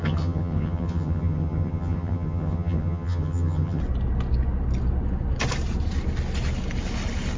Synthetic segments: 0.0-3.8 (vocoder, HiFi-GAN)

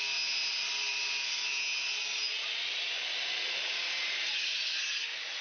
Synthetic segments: none

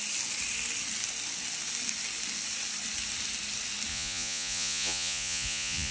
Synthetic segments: 3.9-5.9 (vocoder, Vocos)

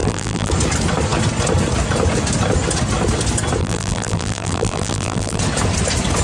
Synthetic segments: 0.0-0.5 (vocoder, BigVGAN v2); 3.6-5.4

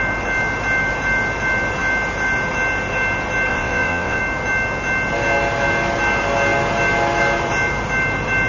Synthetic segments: 3.5-4.2 (vocoder, WaveNeXt)